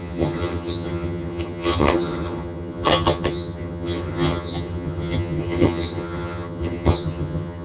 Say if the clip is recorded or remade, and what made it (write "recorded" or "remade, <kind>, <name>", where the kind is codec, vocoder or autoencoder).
remade, vocoder, HiFi-GAN